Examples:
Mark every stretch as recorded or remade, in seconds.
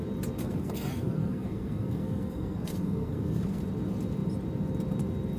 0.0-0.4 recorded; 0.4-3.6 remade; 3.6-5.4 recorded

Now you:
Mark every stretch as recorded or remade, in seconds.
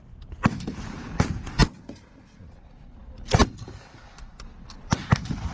0.0-5.5 recorded